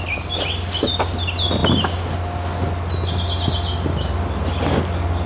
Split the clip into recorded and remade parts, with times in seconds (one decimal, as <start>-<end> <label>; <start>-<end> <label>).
0.0-5.3 recorded